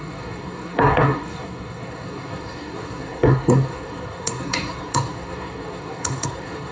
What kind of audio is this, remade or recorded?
remade